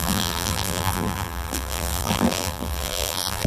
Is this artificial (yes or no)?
yes